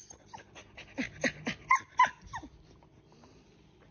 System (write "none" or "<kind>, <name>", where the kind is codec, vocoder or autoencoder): none